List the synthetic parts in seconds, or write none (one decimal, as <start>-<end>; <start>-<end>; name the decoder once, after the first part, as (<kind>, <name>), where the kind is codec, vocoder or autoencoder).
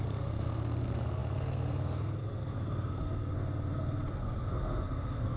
0.0-5.4 (codec, SNAC)